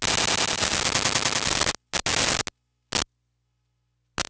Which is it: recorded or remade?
recorded